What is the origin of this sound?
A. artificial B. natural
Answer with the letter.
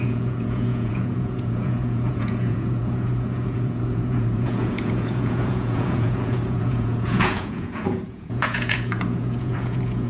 A